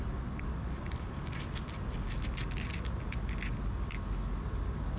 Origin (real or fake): real